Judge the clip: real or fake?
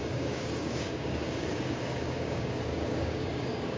fake